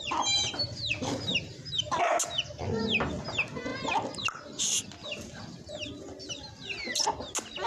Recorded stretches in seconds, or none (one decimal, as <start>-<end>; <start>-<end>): 0.0-7.7